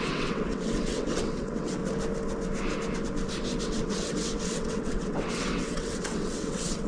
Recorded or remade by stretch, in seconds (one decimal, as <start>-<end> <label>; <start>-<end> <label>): 0.0-1.8 remade; 1.8-3.6 recorded; 3.6-6.9 remade